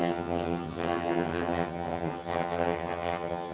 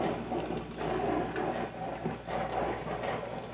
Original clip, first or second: second